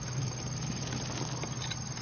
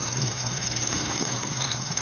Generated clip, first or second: second